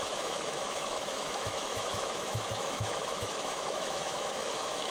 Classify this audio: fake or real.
fake